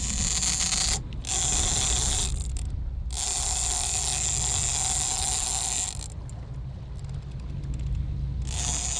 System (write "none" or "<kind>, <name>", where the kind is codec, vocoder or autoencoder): none